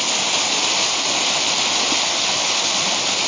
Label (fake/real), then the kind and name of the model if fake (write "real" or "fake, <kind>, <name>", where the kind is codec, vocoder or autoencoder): real